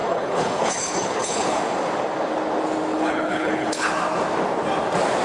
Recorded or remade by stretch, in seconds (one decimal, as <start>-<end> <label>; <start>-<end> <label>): 0.0-1.6 remade; 1.6-2.9 recorded; 2.9-3.9 remade; 3.9-5.2 recorded